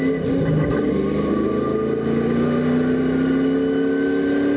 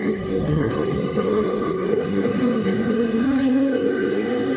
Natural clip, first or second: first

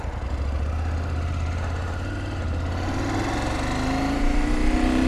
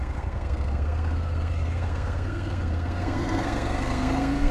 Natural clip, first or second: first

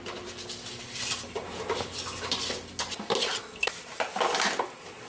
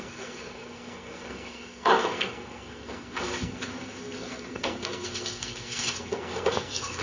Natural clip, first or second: first